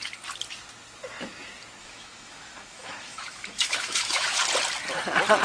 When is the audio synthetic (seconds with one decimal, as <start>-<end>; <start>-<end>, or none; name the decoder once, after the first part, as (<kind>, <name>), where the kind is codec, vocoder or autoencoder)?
1.8-4.4 (autoencoder, DAC-VAE)